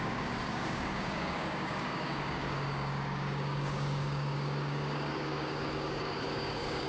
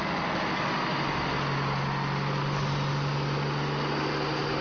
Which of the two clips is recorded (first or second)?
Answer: second